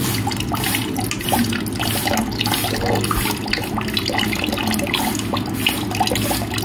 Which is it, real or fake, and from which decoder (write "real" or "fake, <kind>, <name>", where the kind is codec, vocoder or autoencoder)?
real